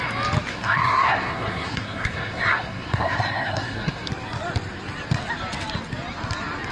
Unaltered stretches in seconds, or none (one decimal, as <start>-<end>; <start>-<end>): 0.0-0.5; 4.1-6.7